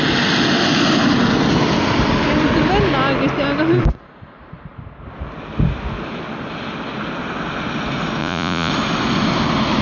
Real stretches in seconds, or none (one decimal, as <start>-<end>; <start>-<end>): 0.0-8.2; 8.7-9.8